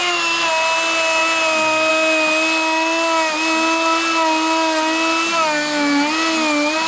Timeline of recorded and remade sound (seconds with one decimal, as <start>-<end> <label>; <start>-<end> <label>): 0.0-0.5 remade; 0.5-6.9 recorded